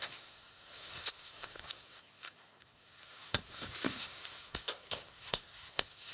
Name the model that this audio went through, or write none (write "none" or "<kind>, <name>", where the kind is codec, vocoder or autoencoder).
codec, SNAC